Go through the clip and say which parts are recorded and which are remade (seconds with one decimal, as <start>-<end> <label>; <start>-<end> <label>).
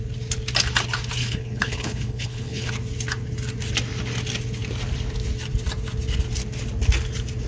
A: 0.0-1.2 recorded; 1.2-2.7 remade; 2.7-7.5 recorded